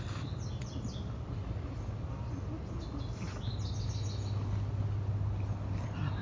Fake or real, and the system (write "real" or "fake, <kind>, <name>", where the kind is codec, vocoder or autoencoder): real